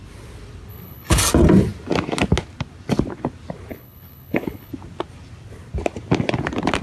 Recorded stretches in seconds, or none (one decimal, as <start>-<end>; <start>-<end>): 0.0-0.7; 1.2-3.7; 4.7-6.8